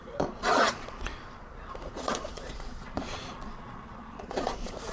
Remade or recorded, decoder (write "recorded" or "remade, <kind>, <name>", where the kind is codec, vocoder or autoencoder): remade, vocoder, Vocos